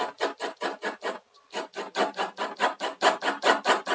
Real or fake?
real